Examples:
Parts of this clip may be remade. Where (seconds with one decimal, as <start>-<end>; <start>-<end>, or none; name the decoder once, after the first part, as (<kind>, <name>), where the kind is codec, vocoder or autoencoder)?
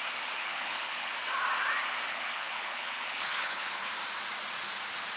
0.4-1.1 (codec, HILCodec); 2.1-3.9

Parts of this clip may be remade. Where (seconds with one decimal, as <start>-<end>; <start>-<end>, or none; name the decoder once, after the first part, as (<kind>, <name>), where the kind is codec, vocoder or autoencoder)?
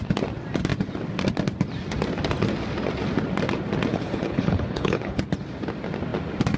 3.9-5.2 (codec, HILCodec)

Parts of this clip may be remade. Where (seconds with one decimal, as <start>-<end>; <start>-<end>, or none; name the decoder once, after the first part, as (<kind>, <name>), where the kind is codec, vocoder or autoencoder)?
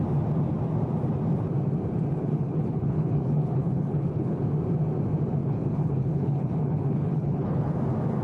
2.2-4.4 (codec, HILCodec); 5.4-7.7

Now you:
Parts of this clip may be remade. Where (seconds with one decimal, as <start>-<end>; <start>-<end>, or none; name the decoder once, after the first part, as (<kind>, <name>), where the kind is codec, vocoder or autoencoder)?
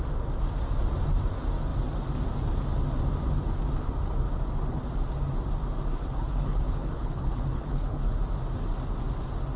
5.9-8.2 (codec, HILCodec)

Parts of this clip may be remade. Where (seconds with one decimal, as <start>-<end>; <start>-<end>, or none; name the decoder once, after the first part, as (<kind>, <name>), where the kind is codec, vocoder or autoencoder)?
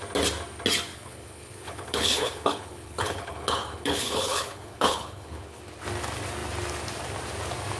0.9-5.6 (codec, HILCodec)